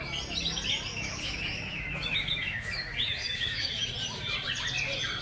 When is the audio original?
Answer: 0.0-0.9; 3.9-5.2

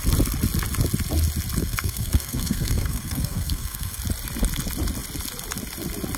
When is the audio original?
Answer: 0.0-1.6; 4.0-6.2

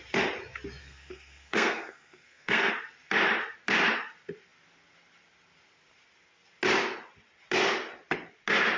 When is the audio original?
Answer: 0.0-0.8; 2.7-8.8

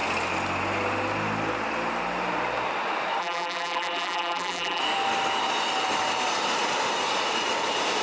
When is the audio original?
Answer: 0.0-3.2; 4.8-8.0

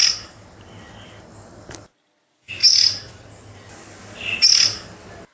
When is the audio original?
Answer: 0.0-5.3

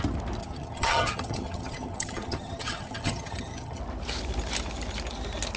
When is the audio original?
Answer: 0.0-0.4; 3.8-5.6

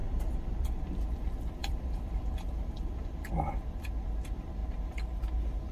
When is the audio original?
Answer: 0.9-1.6; 3.3-5.7